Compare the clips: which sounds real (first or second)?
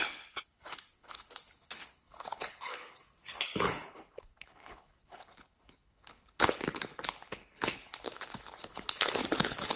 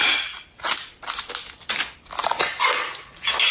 second